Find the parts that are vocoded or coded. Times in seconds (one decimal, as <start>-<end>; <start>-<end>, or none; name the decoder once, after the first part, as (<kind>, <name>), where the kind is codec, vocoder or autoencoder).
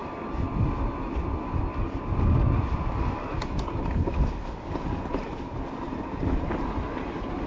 none